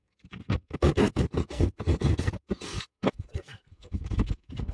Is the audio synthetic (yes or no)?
yes